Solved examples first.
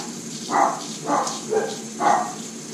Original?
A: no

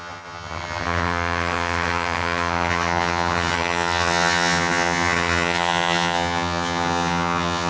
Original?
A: no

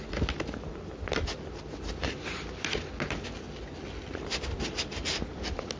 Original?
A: yes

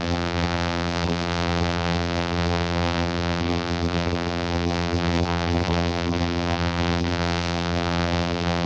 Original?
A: no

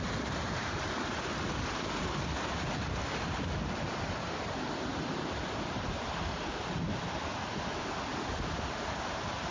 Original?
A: yes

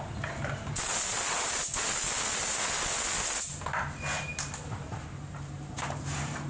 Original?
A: yes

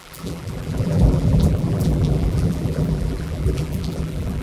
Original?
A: no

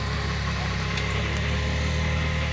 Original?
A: yes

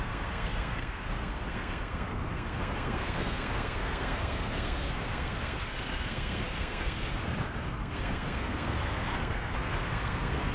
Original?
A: no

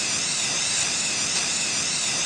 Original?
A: yes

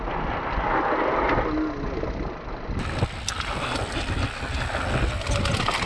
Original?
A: yes